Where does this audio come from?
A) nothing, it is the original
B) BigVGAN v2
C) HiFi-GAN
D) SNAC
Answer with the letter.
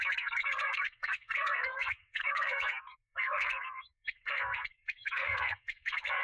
D